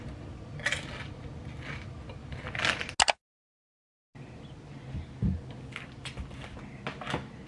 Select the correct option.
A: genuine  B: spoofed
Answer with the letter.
A